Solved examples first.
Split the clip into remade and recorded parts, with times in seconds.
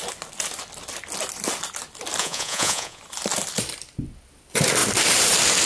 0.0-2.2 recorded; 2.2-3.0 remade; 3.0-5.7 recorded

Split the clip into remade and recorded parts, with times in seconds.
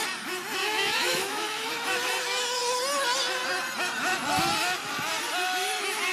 0.0-0.6 recorded; 0.6-1.7 remade; 1.7-6.1 recorded